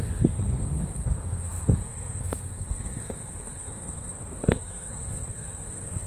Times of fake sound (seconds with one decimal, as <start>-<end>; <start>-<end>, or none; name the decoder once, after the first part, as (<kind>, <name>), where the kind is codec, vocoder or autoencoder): 0.0-6.1 (codec, SNAC)